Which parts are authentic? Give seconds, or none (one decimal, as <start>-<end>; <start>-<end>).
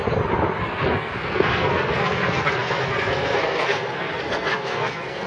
0.0-0.6